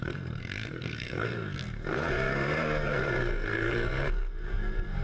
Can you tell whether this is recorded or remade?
remade